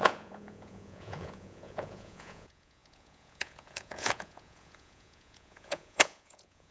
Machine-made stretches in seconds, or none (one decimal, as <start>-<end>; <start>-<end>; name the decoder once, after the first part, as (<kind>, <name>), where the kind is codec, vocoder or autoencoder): 0.0-6.7 (vocoder, Vocos)